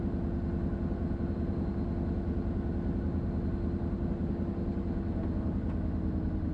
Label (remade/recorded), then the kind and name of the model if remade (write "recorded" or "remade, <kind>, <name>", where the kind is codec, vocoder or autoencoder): recorded